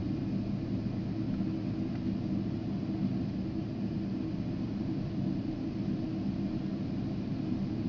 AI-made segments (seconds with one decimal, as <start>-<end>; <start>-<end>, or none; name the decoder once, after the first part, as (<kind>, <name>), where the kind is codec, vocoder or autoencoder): none